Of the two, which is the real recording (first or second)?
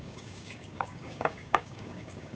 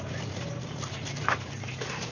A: second